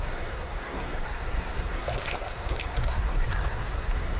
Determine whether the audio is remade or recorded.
remade